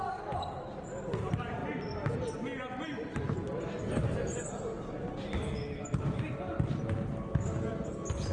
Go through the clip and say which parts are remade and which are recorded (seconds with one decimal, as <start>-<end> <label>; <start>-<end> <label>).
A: 0.0-8.3 recorded